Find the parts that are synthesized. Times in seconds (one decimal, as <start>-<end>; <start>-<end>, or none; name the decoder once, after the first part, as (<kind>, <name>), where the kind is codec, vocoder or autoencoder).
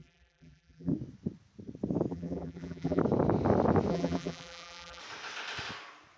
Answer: 0.0-0.9 (vocoder, BigVGAN v2); 2.1-3.0; 3.9-5.0